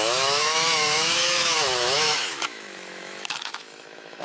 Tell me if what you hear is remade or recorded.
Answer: remade